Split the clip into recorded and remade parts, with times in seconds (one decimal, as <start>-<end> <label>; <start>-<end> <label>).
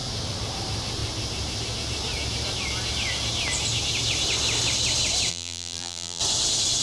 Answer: 0.0-5.3 recorded; 5.3-6.2 remade; 6.2-6.8 recorded